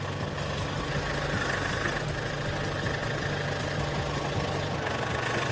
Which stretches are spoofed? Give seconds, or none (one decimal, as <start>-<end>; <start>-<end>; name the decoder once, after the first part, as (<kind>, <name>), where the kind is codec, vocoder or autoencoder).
none